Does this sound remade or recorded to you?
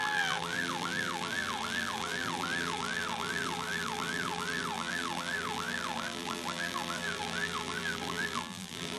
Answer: remade